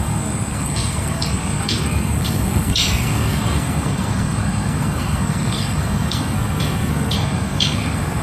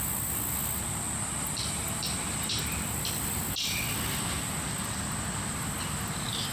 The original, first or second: second